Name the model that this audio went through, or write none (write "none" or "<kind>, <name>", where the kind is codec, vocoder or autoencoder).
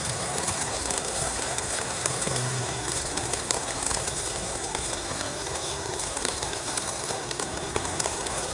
codec, SNAC